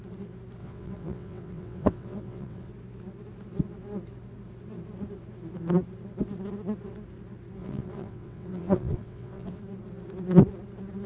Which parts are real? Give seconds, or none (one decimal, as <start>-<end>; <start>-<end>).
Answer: 0.0-0.6; 2.7-7.6; 9.6-11.1

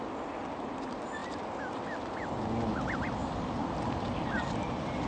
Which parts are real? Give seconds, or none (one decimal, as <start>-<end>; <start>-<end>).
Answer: 0.0-5.1